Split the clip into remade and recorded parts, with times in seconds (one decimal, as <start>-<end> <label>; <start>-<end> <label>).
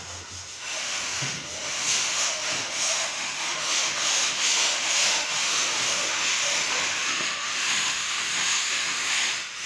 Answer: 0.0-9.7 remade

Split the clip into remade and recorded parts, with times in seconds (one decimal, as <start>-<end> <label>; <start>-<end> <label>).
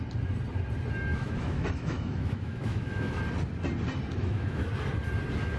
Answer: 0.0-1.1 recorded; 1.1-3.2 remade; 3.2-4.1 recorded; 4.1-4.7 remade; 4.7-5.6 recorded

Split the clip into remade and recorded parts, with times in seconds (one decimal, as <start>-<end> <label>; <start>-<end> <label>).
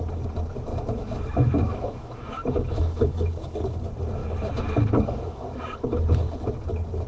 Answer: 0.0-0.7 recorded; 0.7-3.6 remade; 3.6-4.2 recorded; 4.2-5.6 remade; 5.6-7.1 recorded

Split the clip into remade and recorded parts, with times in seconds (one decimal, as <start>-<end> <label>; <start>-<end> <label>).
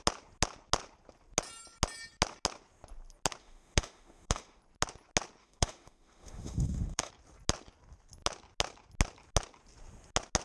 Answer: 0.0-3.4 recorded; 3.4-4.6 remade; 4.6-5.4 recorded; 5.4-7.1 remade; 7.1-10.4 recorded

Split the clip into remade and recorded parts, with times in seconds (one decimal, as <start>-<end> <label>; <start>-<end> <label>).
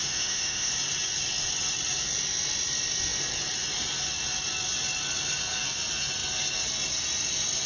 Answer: 0.0-0.7 remade; 0.7-7.7 recorded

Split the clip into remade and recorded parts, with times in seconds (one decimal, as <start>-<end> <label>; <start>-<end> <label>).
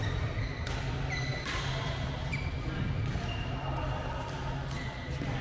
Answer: 0.0-5.4 recorded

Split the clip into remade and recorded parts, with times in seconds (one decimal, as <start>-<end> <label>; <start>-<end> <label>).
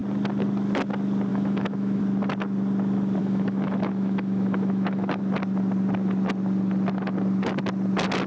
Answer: 0.0-1.3 recorded; 1.3-2.0 remade; 2.0-3.2 recorded; 3.2-5.2 remade; 5.2-8.3 recorded